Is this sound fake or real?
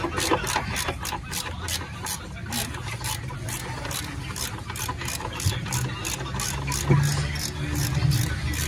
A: real